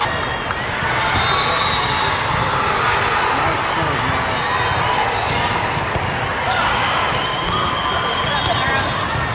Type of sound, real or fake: real